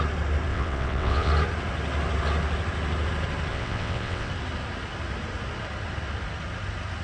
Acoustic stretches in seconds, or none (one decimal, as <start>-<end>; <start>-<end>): 0.0-0.5; 1.3-3.5; 4.3-7.0